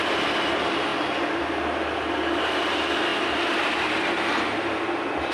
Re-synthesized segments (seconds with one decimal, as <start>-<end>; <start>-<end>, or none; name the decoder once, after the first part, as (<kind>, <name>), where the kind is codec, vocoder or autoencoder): 0.0-0.9 (vocoder, BigVGAN v2); 2.1-5.3